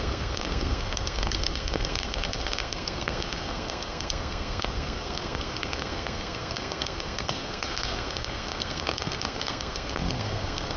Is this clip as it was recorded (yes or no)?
no